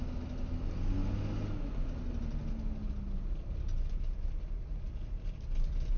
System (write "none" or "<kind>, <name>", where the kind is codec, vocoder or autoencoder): none